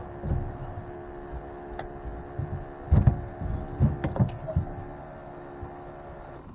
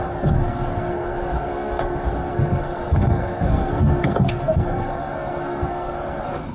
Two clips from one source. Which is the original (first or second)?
first